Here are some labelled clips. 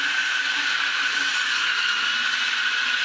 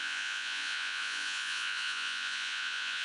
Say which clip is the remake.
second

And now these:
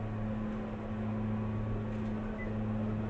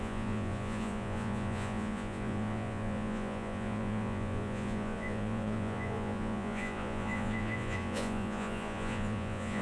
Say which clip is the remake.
second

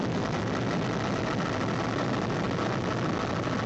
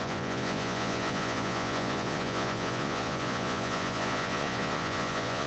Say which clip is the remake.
second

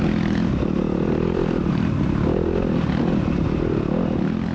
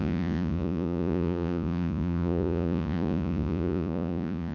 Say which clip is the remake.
second